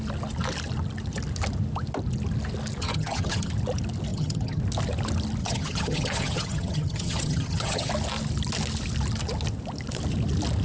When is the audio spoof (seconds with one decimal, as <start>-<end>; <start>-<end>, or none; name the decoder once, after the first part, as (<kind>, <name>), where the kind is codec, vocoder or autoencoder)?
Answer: 2.8-3.5 (vocoder, HiFi-GAN); 4.1-4.6; 5.4-7.9